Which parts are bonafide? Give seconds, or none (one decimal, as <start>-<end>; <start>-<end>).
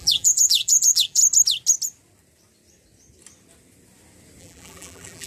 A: 1.2-4.4